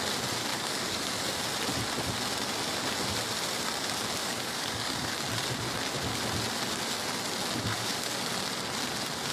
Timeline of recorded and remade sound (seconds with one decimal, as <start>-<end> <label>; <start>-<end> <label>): 0.0-0.5 recorded; 0.5-1.4 remade; 1.4-4.2 recorded; 4.2-5.1 remade; 5.1-7.7 recorded; 7.7-8.3 remade; 8.3-9.3 recorded